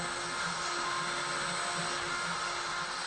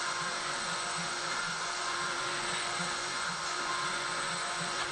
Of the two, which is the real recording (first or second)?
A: first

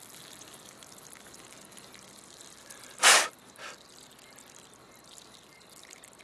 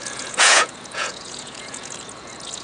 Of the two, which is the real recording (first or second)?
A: first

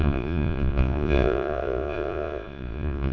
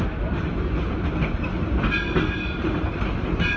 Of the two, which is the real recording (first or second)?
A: second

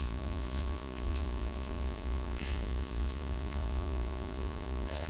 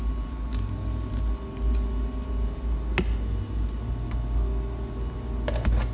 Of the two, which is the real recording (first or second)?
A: second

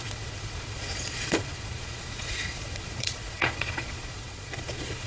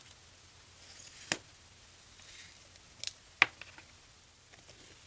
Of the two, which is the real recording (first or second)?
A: second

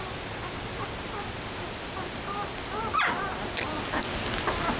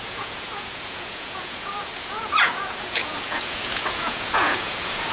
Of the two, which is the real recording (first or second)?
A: first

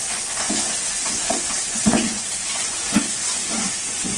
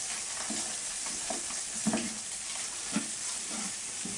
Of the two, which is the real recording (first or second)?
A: second